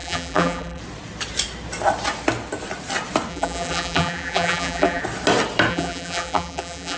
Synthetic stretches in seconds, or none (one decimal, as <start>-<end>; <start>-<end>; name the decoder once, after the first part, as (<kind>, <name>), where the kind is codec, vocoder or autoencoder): 0.0-0.8 (vocoder, BigVGAN v2); 3.3-5.0; 5.7-7.0